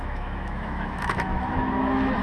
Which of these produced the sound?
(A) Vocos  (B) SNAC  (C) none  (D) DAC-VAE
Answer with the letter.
D